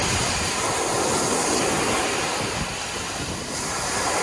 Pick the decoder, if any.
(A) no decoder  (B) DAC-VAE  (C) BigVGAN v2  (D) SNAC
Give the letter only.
A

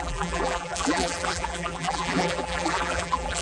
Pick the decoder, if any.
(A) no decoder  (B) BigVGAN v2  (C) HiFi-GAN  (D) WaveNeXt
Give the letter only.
B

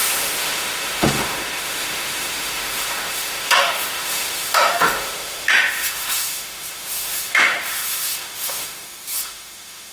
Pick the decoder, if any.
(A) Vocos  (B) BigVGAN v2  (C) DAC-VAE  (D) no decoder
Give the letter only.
C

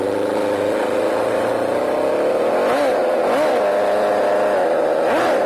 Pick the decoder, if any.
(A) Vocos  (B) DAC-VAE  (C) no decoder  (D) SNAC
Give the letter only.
C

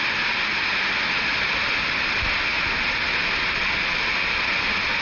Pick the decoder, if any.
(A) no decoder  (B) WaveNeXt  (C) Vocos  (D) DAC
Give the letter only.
A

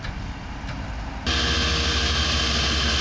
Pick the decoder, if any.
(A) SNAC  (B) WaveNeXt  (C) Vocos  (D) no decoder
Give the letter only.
D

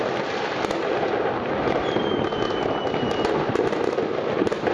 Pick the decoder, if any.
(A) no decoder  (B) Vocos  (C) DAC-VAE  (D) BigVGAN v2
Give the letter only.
A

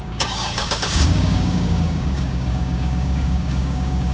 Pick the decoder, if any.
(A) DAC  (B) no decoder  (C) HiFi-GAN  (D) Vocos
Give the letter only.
A